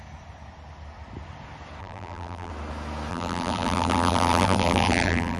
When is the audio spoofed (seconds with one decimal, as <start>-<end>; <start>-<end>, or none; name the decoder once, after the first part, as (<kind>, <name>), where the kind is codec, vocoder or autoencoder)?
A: 1.8-2.5 (vocoder, BigVGAN v2); 3.1-5.4